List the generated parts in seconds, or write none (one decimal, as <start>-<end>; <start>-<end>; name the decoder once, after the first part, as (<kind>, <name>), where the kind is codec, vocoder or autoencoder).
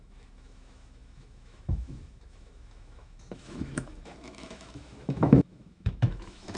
0.0-6.6 (autoencoder, DAC-VAE)